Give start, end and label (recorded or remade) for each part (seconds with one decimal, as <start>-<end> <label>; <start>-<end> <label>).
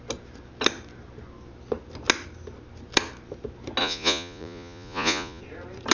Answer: 0.0-3.8 recorded; 3.8-5.4 remade; 5.4-5.9 recorded